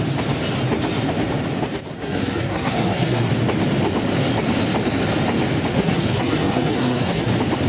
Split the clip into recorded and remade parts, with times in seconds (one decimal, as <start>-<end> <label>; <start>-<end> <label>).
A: 0.0-1.9 recorded; 1.9-3.3 remade; 3.3-5.7 recorded; 5.7-7.3 remade; 7.3-7.7 recorded